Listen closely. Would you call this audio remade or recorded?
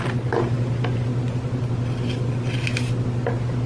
recorded